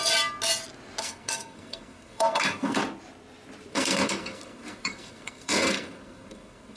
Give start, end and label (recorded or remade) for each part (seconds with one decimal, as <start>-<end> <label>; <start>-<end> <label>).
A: 0.0-1.0 recorded; 1.0-2.8 remade; 2.8-3.7 recorded; 3.7-6.8 remade

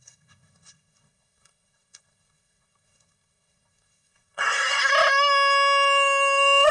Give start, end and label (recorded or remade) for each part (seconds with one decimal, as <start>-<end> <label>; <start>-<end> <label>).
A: 0.0-4.9 remade; 4.9-6.7 recorded

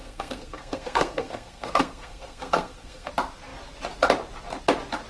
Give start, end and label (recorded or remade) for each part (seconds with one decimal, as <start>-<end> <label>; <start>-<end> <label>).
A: 0.0-3.1 remade; 3.1-5.1 recorded

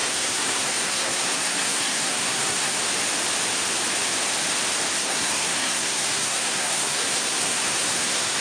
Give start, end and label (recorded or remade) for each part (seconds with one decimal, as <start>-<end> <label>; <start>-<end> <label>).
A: 0.0-2.8 remade; 2.8-5.0 recorded; 5.0-8.4 remade

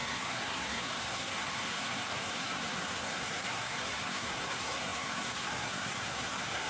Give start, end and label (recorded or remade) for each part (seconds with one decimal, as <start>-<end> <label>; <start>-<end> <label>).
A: 0.0-6.7 remade